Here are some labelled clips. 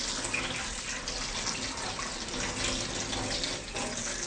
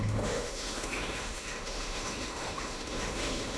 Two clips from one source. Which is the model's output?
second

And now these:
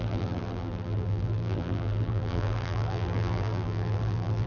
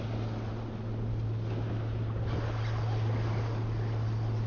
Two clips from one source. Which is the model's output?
first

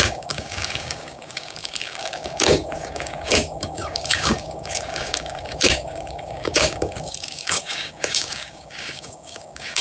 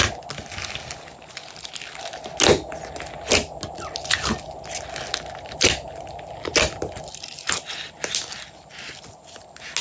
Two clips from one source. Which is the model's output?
first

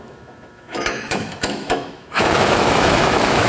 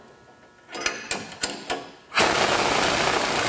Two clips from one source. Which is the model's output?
first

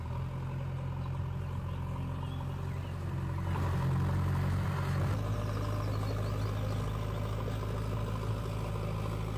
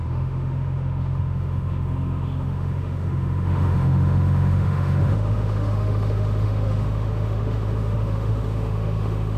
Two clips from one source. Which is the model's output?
second